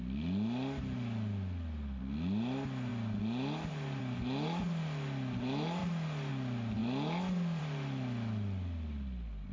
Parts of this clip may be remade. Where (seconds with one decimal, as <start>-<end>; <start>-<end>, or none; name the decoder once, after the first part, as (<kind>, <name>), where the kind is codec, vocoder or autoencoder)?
none